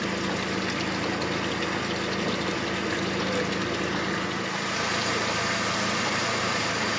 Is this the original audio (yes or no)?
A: yes